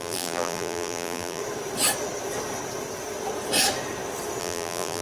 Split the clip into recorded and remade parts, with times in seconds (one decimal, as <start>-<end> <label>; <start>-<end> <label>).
0.0-1.4 remade; 1.4-4.4 recorded; 4.4-5.0 remade